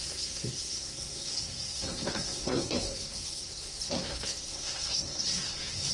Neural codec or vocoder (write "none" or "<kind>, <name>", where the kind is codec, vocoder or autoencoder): codec, SNAC